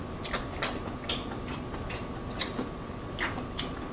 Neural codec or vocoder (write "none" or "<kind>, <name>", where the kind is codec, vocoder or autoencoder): none